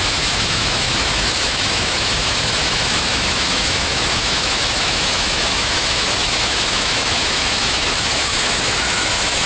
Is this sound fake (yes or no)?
yes